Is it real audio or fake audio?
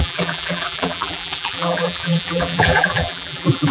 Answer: fake